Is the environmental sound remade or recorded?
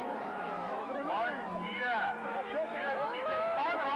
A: remade